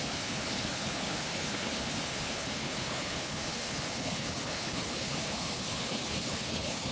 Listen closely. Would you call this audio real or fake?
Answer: fake